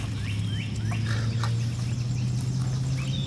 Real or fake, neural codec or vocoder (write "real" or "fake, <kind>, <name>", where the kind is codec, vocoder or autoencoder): real